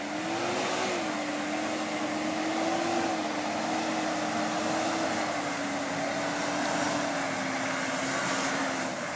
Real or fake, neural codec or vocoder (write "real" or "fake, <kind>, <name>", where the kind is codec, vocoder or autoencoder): real